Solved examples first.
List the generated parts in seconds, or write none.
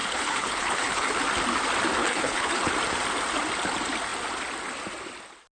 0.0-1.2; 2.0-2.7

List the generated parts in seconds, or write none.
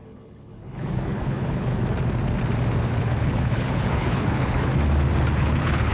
0.0-1.7; 3.0-4.7; 5.4-5.9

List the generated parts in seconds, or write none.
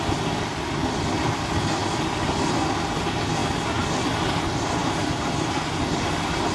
none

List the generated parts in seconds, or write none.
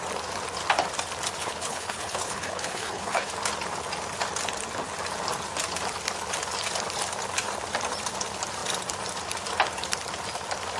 1.4-3.3